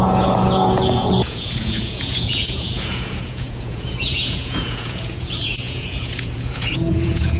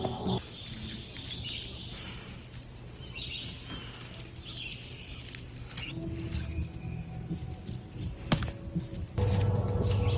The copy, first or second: first